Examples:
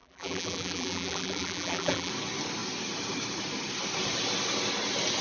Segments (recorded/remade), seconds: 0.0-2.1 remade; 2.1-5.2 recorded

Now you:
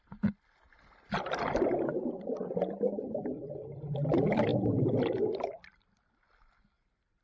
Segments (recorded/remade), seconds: 0.0-4.5 remade; 4.5-5.0 recorded; 5.0-7.2 remade

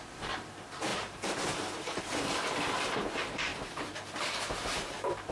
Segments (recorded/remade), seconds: 0.0-3.5 remade; 3.5-4.1 recorded; 4.1-5.3 remade

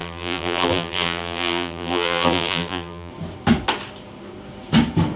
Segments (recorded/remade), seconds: 0.0-3.1 remade; 3.1-5.2 recorded